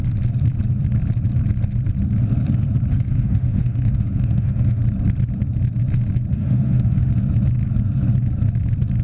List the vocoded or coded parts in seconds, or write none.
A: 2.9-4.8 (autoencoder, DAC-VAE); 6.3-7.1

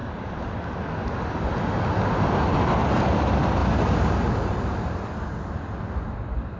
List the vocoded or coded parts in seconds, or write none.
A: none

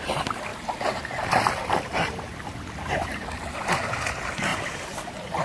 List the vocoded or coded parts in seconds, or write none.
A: none

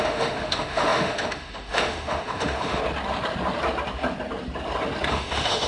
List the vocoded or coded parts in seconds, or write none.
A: 0.0-2.8 (autoencoder, DAC-VAE); 5.1-5.7

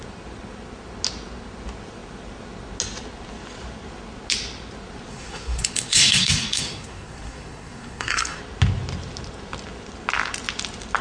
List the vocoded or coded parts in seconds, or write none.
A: 5.1-8.4 (codec, SNAC)

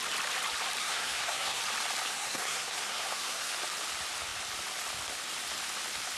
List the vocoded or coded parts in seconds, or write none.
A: 0.8-1.6 (codec, SNAC); 2.1-3.5

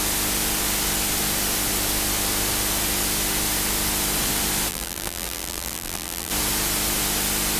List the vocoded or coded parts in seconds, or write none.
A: 4.7-6.3 (vocoder, BigVGAN v2)

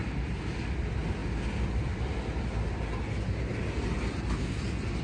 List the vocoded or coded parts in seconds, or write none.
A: 0.0-0.6 (vocoder, BigVGAN v2)